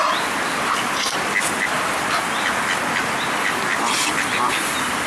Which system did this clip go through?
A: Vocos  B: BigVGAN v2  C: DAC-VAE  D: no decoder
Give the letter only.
D